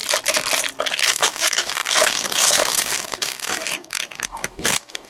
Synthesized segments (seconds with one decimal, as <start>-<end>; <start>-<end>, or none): 0.9-5.1